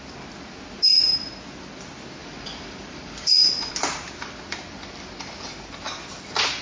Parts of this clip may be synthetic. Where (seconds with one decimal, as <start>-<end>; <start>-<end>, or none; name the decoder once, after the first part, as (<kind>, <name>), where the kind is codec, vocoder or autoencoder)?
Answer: 2.2-3.7 (vocoder, BigVGAN v2)

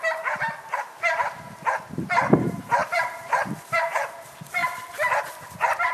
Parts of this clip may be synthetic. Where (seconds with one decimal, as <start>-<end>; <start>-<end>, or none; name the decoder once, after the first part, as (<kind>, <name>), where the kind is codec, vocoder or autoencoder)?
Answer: 2.8-3.8 (vocoder, BigVGAN v2); 4.6-5.2